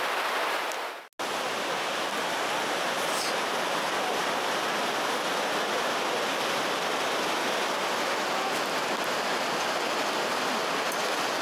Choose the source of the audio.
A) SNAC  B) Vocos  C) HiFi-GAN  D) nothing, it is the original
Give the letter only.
D